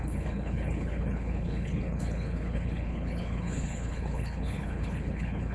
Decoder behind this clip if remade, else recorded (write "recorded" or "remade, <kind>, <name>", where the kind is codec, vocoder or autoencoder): remade, codec, HILCodec